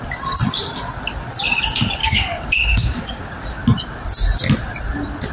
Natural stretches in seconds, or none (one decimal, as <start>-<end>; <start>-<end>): 0.0-2.0; 3.2-5.3